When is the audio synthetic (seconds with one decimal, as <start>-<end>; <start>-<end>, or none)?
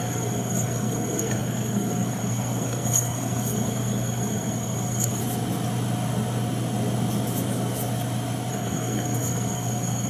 0.0-5.2; 8.5-10.1